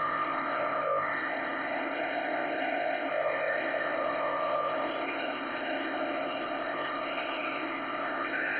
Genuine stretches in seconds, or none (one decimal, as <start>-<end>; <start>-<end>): none